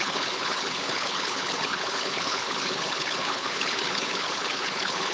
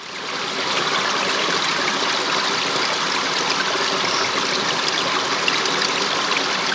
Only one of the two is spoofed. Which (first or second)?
first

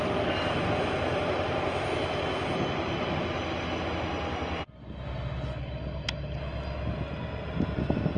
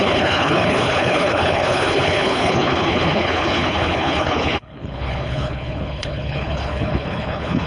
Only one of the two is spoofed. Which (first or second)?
second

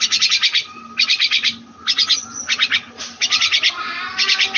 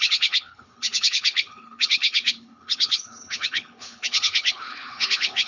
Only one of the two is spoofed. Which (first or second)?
second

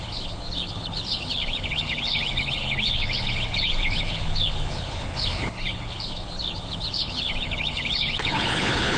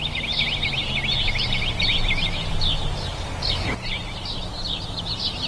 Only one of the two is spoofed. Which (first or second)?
first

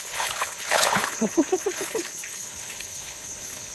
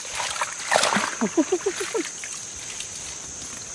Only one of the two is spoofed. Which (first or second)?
first